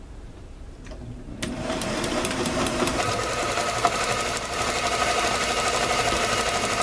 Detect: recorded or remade remade